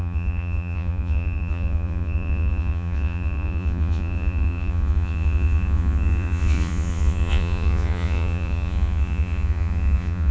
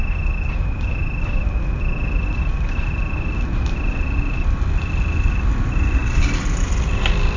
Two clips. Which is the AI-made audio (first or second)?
first